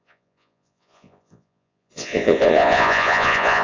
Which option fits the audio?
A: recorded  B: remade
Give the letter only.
B